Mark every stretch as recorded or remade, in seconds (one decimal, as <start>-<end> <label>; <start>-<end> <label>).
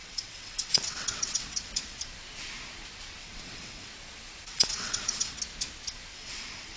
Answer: 0.0-2.0 remade; 2.0-3.2 recorded; 3.2-3.9 remade; 3.9-4.5 recorded; 4.5-5.4 remade; 5.4-6.1 recorded; 6.1-6.8 remade